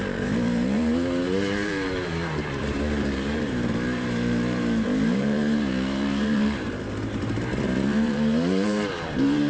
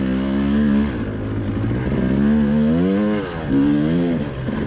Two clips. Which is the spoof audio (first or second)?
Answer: first